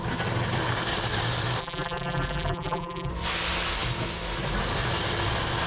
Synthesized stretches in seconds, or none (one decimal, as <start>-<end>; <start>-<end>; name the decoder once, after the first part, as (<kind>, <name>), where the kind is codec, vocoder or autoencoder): 1.6-3.1 (vocoder, BigVGAN v2)